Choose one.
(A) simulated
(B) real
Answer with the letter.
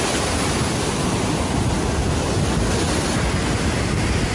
B